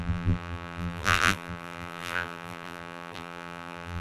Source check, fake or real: fake